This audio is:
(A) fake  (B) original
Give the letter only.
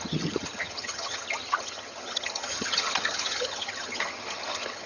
A